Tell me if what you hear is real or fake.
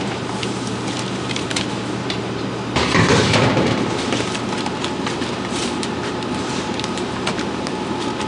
fake